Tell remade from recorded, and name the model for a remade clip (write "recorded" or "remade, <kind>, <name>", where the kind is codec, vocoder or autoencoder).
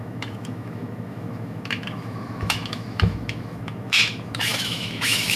remade, autoencoder, DAC-VAE